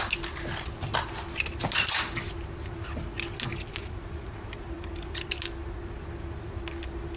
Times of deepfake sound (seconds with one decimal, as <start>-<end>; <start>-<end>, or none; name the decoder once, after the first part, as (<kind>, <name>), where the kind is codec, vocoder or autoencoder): 3.5-5.4 (vocoder, BigVGAN v2)